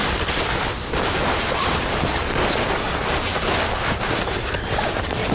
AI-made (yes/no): no